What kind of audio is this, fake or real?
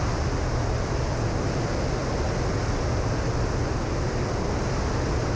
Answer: real